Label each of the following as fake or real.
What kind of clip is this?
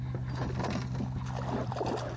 real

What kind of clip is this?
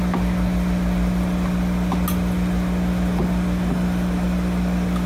real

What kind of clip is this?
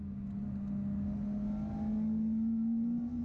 real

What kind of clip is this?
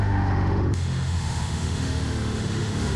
fake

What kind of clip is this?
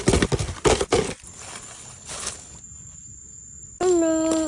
real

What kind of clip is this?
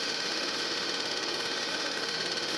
fake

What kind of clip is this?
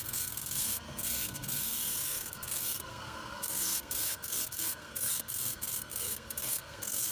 fake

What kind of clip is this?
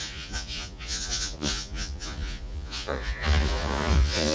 fake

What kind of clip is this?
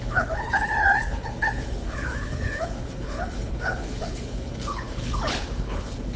fake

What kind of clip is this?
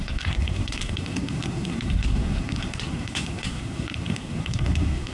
fake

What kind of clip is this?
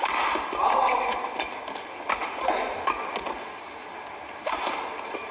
real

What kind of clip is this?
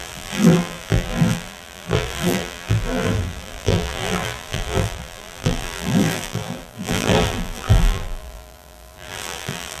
fake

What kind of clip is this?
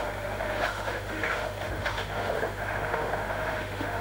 fake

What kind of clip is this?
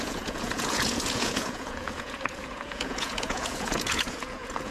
fake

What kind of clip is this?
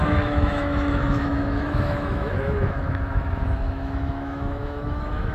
fake